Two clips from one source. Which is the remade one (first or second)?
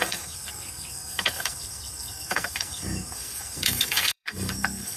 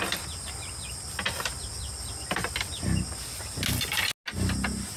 first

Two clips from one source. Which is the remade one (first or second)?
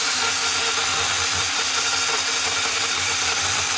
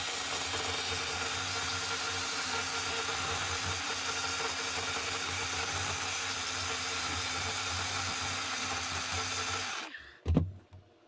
first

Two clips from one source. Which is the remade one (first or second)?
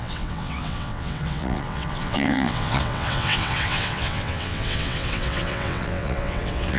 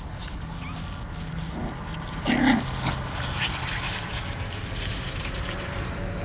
first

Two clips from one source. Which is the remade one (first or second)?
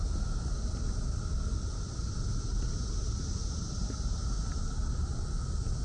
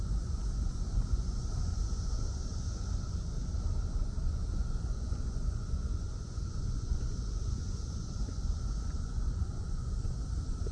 second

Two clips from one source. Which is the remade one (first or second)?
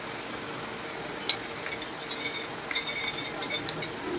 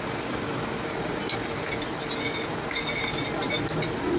second